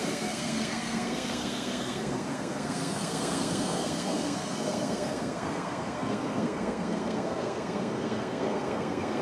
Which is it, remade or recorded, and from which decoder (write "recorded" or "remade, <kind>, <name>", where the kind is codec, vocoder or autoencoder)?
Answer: remade, codec, SNAC